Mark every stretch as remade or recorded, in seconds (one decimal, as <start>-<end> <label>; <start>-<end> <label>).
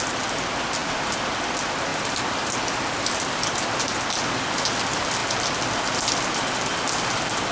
0.0-7.5 recorded